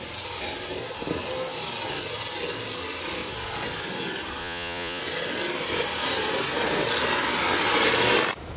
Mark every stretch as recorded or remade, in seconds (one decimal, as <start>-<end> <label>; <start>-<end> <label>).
0.0-4.4 recorded; 4.4-5.0 remade; 5.0-8.6 recorded